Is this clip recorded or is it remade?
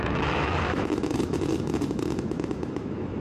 remade